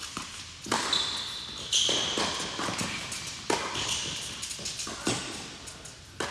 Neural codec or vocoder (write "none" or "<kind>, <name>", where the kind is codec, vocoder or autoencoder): none